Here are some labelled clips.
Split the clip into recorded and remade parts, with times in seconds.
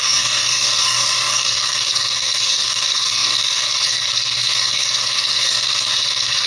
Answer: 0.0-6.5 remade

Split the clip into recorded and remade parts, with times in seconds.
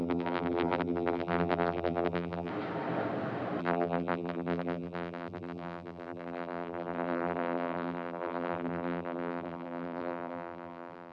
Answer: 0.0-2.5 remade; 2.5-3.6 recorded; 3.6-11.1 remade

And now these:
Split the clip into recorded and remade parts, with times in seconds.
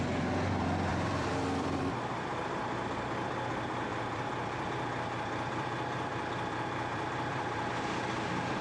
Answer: 0.0-0.9 recorded; 0.9-1.8 remade; 1.8-3.9 recorded; 3.9-7.7 remade; 7.7-8.6 recorded